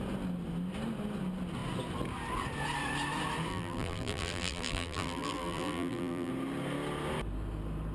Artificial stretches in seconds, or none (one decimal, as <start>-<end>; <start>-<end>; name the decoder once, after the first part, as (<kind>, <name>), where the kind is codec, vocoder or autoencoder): 3.5-6.3 (vocoder, BigVGAN v2)

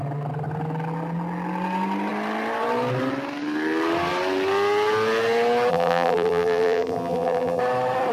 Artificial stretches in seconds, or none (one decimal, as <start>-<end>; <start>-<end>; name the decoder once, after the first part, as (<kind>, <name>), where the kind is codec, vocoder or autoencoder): 5.7-7.6 (vocoder, BigVGAN v2)

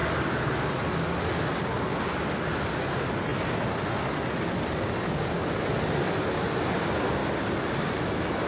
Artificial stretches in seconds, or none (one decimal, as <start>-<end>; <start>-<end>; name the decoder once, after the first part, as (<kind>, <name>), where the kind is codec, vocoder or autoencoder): 2.2-3.3 (vocoder, BigVGAN v2); 5.7-7.2; 7.9-8.5

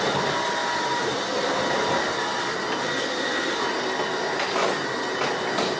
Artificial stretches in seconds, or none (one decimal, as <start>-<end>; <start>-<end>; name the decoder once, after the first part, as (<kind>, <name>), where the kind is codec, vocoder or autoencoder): 0.6-1.2 (vocoder, BigVGAN v2)